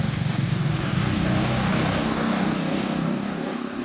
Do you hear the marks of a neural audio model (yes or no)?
yes